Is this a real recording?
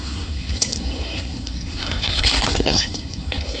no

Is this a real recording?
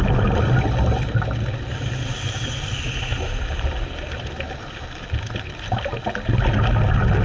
yes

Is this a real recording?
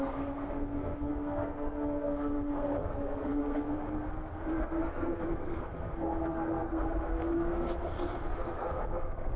no